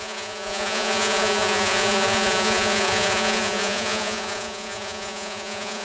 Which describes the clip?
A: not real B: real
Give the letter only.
A